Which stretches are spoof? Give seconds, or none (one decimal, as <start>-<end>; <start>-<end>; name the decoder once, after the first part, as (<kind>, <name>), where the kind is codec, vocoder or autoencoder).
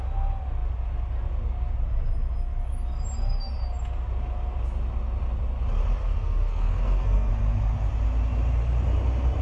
6.0-7.3 (codec, SNAC)